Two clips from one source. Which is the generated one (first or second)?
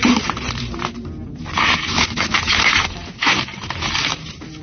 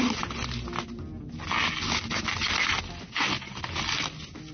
first